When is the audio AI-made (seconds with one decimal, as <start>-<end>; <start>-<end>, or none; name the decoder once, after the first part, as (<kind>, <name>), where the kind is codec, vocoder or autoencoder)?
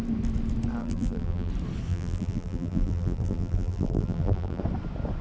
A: 0.8-1.5 (vocoder, BigVGAN v2); 1.9-4.6